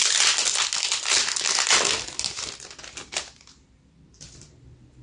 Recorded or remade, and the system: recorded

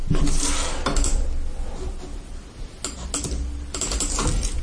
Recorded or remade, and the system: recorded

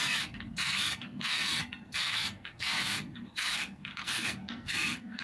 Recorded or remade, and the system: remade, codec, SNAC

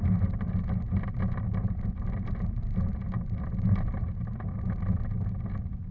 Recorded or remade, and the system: recorded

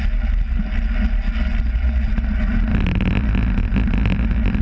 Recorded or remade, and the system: recorded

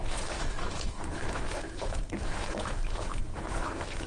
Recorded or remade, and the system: remade, autoencoder, DAC-VAE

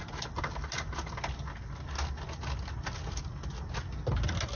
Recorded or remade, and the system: recorded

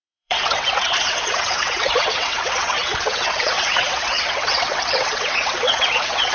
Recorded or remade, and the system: remade, vocoder, WaveNeXt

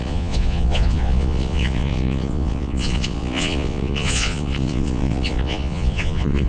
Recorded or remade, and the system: remade, vocoder, Vocos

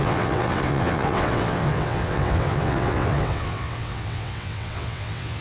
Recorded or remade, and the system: remade, vocoder, WaveNeXt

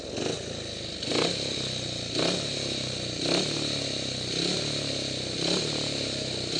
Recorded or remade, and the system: recorded